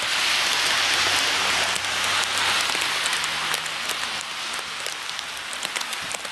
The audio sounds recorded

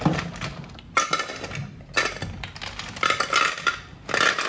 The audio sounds recorded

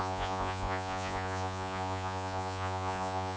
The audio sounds remade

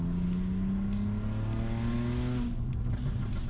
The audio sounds recorded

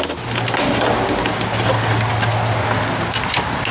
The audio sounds recorded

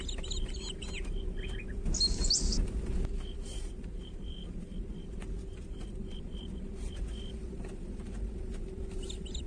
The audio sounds recorded